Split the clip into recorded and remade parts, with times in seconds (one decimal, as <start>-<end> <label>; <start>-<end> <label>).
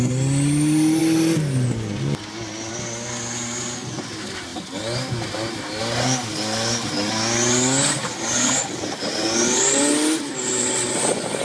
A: 0.0-11.4 recorded